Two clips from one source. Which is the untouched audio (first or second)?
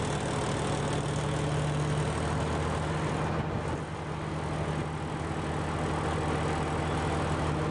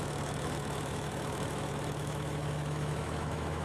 first